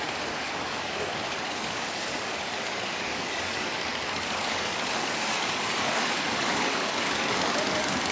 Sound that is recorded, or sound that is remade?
remade